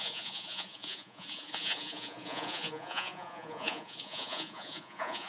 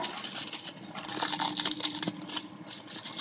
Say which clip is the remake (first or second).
first